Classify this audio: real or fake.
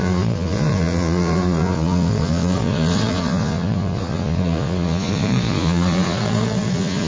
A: fake